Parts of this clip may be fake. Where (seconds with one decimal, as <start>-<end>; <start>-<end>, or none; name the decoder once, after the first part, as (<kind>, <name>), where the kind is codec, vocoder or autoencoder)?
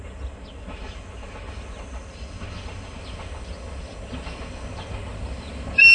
none